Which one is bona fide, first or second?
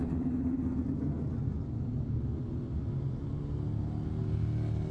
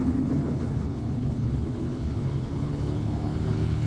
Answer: first